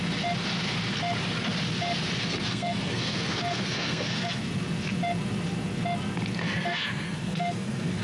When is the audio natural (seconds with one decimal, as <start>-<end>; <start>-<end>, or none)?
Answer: 0.0-2.2; 4.4-6.4